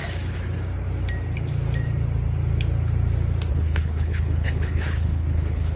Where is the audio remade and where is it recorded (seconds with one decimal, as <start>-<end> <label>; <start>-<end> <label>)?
0.0-3.5 recorded; 3.5-5.8 remade